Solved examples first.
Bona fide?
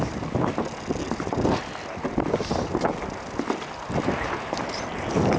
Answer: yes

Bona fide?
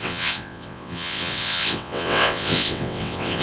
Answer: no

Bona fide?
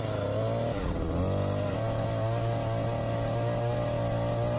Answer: yes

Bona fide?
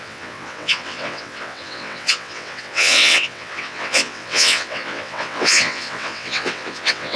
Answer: no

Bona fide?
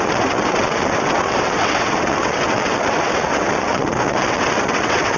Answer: no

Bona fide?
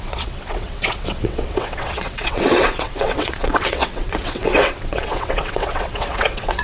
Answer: no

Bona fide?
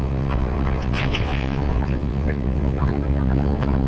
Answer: no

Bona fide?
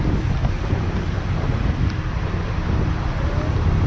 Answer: yes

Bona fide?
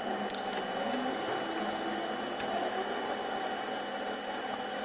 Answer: yes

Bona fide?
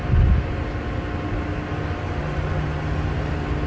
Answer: yes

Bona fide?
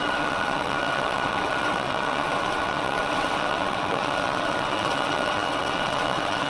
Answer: no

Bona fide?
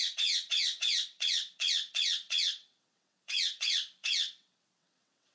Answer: no